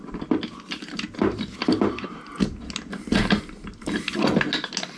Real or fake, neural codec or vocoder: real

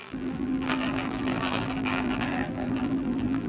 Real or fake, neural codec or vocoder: fake, vocoder, BigVGAN v2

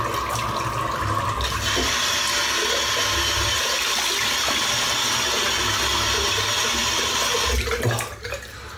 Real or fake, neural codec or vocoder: real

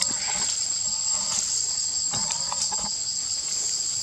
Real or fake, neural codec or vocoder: real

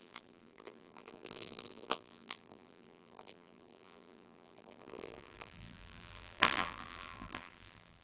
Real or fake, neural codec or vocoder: fake, vocoder, BigVGAN v2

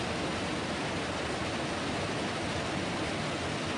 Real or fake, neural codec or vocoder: real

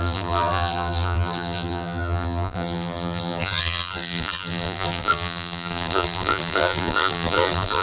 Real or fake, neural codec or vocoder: fake, vocoder, BigVGAN v2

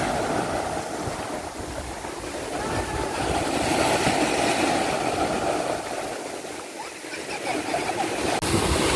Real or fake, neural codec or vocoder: real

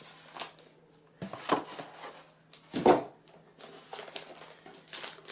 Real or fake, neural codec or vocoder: real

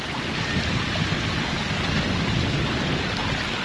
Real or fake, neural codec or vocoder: real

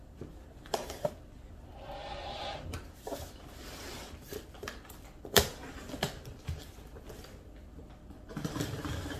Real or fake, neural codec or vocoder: fake, vocoder, BigVGAN v2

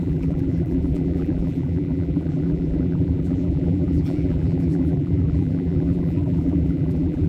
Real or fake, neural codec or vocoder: fake, vocoder, BigVGAN v2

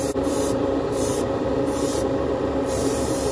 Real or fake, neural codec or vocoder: fake, vocoder, BigVGAN v2